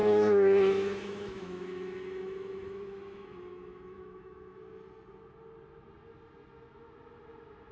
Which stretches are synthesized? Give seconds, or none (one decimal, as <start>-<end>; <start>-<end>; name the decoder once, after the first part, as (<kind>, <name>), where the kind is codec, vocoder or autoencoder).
0.0-4.6 (autoencoder, DAC-VAE)